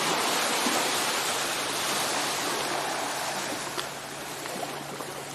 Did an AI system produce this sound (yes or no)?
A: no